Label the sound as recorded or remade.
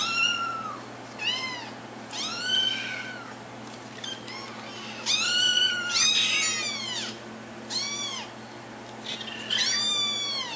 recorded